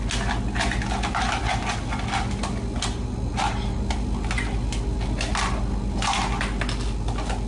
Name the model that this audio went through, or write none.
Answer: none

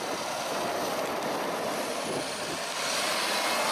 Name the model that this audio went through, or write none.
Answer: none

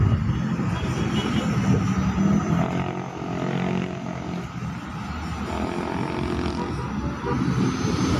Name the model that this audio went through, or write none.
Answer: none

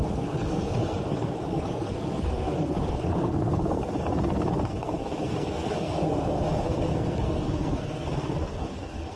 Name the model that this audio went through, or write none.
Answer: codec, SNAC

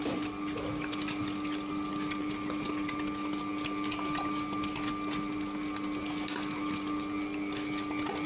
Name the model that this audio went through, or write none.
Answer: none